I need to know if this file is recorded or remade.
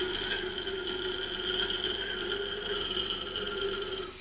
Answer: recorded